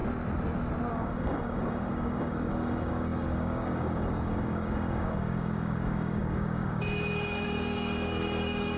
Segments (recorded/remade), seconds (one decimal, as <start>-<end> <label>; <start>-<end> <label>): 0.0-0.9 recorded; 0.9-8.8 remade

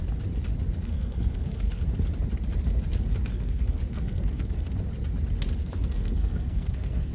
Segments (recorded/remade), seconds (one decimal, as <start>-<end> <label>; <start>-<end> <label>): 0.0-0.8 recorded; 0.8-1.8 remade; 1.8-3.3 recorded; 3.3-4.6 remade; 4.6-5.6 recorded; 5.6-7.1 remade

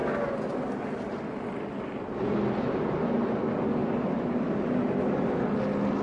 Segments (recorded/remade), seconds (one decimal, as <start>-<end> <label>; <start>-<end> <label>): 0.0-6.0 recorded